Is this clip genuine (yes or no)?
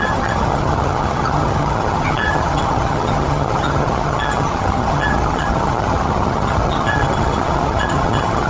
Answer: no